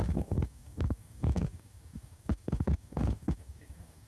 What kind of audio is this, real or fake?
fake